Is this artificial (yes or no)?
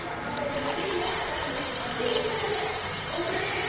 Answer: yes